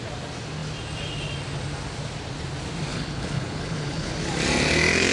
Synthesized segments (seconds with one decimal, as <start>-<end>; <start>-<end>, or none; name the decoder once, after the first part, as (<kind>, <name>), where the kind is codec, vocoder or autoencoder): 2.9-4.1 (codec, HILCodec)